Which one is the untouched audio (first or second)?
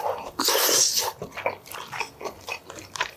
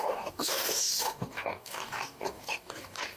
first